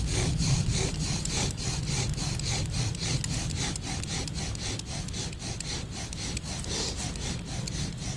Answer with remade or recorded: recorded